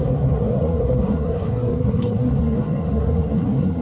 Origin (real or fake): fake